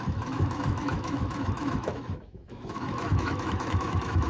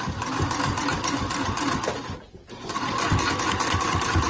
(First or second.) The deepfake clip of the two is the first